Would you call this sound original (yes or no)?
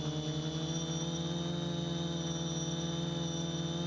yes